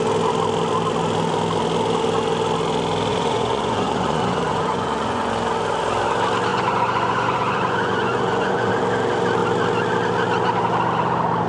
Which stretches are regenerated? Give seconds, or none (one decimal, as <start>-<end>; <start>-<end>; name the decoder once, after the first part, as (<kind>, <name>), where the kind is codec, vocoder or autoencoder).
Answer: 3.1-5.3 (vocoder, Vocos); 6.5-8.7